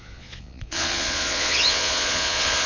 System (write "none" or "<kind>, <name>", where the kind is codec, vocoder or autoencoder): vocoder, Vocos